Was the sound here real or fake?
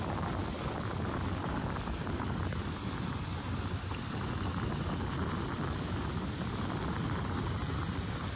real